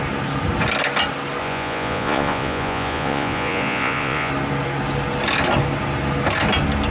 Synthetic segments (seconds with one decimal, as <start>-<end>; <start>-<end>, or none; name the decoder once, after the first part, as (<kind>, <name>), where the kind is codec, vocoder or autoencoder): 1.4-4.3 (vocoder, Vocos)